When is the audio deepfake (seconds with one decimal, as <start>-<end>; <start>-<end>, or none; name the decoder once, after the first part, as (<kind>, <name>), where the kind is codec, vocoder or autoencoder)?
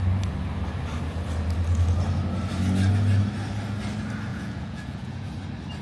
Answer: 4.3-5.3 (vocoder, Vocos)